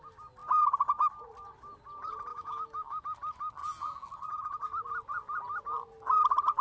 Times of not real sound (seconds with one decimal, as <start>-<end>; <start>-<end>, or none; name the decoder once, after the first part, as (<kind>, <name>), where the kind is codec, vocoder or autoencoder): 2.3-3.0 (autoencoder, DAC-VAE)

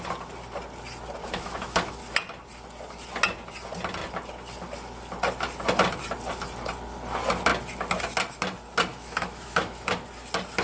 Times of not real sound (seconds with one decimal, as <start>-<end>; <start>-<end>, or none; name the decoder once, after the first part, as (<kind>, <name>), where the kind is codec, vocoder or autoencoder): 1.2-2.0 (autoencoder, DAC-VAE); 8.9-9.9

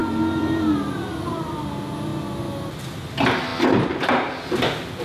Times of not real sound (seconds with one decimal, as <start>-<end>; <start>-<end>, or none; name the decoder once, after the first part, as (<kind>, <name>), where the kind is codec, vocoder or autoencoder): none

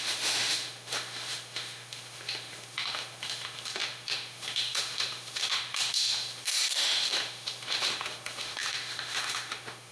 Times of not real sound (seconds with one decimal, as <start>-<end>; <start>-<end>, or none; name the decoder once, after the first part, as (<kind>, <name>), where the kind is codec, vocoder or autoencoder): 0.0-9.9 (autoencoder, DAC-VAE)

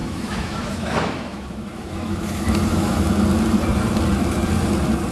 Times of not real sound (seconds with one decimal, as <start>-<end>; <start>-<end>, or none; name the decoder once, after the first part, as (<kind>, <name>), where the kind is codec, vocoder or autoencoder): 0.0-3.1 (autoencoder, DAC-VAE)

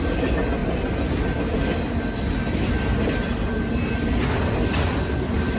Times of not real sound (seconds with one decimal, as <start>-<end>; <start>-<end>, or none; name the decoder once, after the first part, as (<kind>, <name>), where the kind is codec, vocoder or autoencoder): none